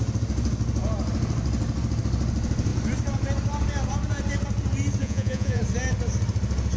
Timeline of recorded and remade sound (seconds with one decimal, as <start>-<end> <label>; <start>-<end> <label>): 0.0-5.0 recorded; 5.0-5.6 remade; 5.6-6.8 recorded